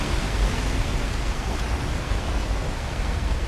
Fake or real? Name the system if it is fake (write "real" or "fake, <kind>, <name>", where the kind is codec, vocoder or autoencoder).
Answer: fake, codec, SNAC